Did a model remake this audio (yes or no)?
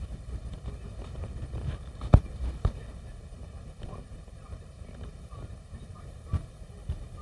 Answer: yes